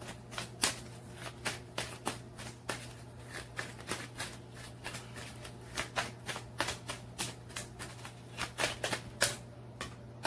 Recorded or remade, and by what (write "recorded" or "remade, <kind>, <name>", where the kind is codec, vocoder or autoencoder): recorded